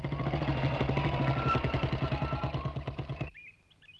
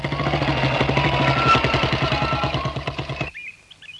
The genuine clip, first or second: second